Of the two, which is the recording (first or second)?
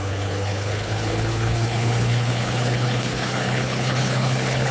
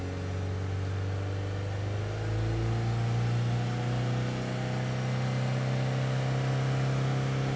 second